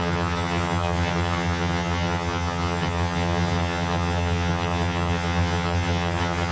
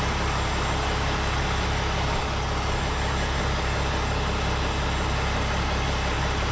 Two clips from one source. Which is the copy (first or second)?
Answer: first